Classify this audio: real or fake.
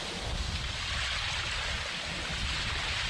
real